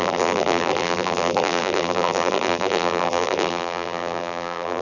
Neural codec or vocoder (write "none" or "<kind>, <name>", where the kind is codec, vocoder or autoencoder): vocoder, BigVGAN v2